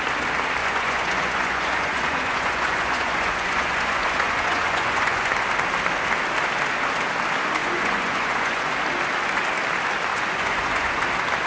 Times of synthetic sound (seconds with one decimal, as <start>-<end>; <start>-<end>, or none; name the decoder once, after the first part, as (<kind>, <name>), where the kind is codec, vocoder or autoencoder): 0.6-5.3 (vocoder, Vocos); 7.6-8.7; 10.1-11.0